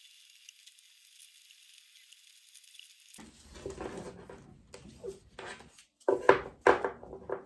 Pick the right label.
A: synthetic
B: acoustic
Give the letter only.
B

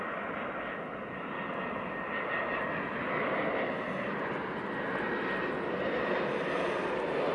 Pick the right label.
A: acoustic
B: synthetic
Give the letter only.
A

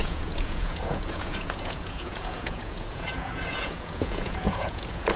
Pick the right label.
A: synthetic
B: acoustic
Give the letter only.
A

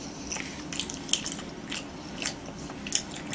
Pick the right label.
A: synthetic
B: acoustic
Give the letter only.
B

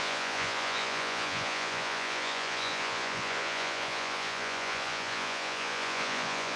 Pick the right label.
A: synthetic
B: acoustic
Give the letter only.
A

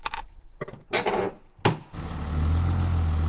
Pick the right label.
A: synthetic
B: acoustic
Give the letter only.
B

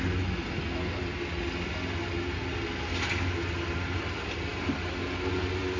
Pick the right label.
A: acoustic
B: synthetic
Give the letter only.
A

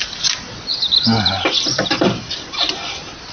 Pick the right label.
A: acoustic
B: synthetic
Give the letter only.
A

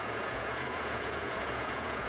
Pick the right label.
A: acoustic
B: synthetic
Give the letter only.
B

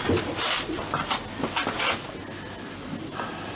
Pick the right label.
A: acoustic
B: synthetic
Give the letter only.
A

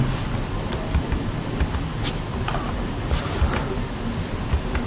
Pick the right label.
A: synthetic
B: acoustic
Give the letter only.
B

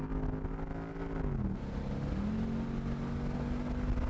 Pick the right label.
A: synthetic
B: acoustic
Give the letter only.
B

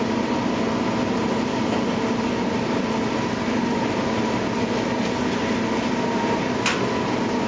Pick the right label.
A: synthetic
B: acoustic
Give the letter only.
B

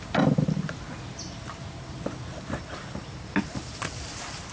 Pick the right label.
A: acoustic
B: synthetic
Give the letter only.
A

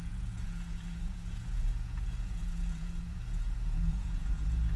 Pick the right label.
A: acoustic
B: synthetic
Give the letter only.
B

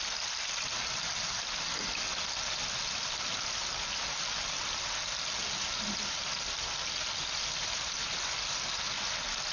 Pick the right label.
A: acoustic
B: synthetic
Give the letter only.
A